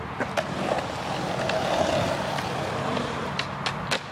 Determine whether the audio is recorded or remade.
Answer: recorded